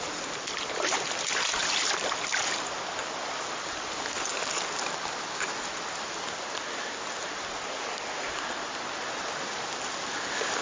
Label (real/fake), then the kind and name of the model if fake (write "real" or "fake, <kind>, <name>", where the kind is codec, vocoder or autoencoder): real